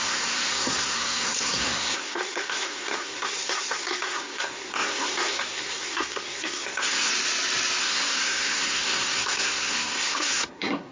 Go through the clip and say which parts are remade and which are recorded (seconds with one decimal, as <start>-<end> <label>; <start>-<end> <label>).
0.0-7.1 remade; 7.1-7.8 recorded; 7.8-10.9 remade